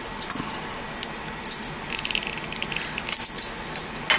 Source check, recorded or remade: recorded